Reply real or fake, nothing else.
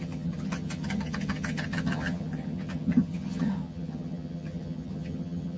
fake